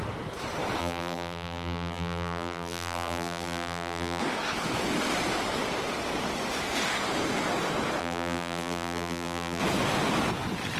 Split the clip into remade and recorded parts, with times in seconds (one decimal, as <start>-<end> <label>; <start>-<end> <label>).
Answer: 0.0-0.8 recorded; 0.8-4.2 remade; 4.2-8.0 recorded; 8.0-9.6 remade; 9.6-10.8 recorded